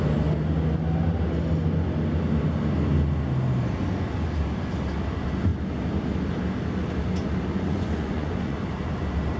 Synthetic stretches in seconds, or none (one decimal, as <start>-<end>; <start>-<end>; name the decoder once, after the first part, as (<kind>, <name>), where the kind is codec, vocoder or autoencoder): 7.5-8.6 (vocoder, Vocos)